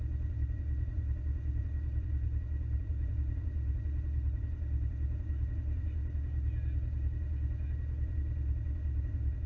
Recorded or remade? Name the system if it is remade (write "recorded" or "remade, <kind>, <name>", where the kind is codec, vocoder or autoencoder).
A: recorded